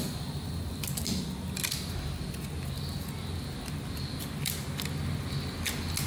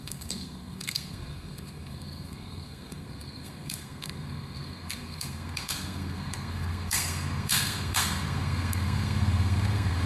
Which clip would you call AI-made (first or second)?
second